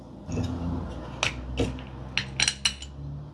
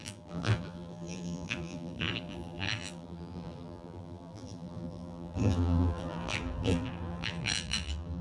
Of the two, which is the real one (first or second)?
first